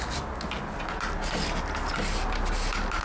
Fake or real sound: real